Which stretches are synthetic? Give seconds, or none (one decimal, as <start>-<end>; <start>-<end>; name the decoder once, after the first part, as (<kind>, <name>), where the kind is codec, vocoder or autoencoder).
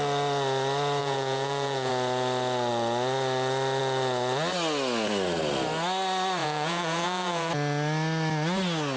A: 1.0-1.9 (vocoder, Vocos); 6.4-7.5